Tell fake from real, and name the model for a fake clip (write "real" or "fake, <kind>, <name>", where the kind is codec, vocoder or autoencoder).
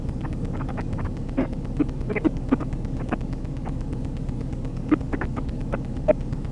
fake, codec, DAC